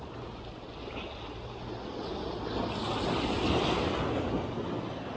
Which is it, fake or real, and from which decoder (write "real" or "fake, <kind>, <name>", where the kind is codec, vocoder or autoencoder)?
real